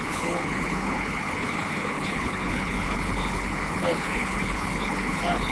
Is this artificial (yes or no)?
yes